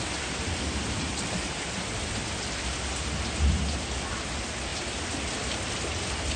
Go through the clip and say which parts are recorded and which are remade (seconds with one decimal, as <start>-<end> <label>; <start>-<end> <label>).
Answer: 0.0-6.4 recorded